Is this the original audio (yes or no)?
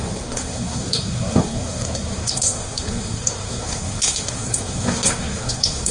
no